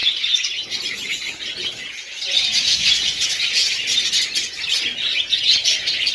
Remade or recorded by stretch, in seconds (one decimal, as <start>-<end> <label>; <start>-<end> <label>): 0.0-3.7 remade; 3.7-5.1 recorded; 5.1-6.1 remade